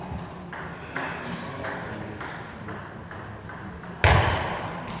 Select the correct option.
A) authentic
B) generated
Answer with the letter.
A